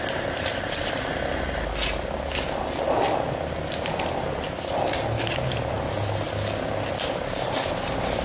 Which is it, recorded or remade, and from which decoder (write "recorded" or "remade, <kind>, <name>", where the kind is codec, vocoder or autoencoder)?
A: recorded